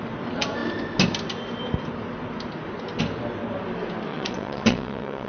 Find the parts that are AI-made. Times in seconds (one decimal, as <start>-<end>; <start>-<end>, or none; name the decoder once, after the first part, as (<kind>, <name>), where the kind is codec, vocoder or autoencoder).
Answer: 4.1-5.3 (vocoder, WaveNeXt)